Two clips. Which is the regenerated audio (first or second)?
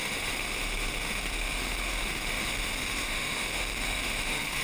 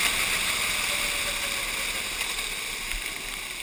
first